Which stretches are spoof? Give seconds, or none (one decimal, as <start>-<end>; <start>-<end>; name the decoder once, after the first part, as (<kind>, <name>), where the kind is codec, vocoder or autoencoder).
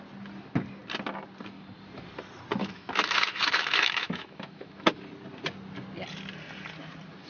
2.6-5.0 (autoencoder, DAC-VAE)